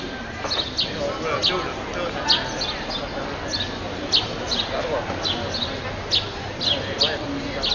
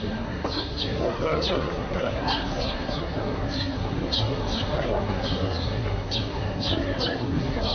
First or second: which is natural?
first